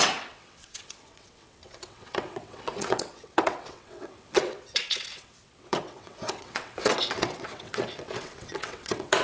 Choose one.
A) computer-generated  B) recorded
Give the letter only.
A